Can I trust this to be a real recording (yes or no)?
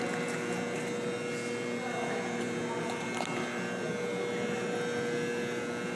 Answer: yes